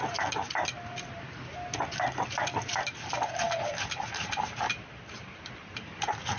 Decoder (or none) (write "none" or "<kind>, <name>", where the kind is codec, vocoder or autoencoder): none